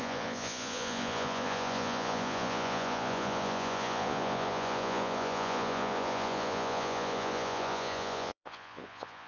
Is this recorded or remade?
remade